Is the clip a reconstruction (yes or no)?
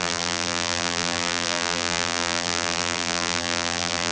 yes